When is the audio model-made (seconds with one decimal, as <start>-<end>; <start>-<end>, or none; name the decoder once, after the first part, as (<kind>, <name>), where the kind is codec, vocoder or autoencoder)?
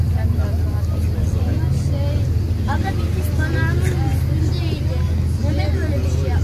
none